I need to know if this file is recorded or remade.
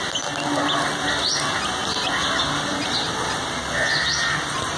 recorded